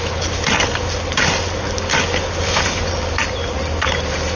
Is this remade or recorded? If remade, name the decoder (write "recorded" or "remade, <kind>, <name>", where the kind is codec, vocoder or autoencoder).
recorded